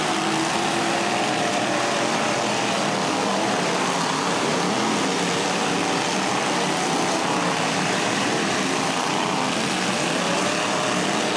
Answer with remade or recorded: remade